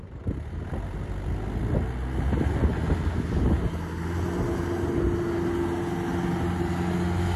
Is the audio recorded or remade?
recorded